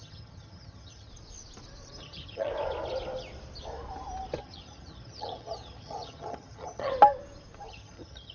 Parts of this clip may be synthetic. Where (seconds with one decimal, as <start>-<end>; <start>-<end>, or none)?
0.0-1.1; 2.0-2.5; 4.4-6.9; 7.7-8.3